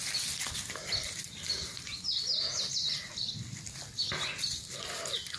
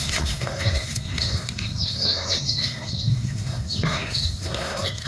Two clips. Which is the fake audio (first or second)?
second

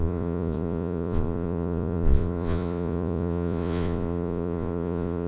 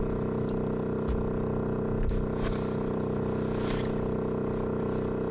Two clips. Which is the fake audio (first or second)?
first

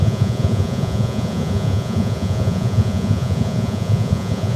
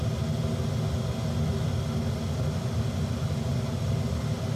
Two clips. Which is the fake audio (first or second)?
first